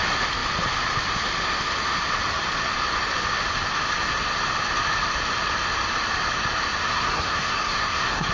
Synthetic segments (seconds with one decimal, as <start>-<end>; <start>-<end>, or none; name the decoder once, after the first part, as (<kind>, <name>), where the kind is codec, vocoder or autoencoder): 6.8-8.3 (codec, SNAC)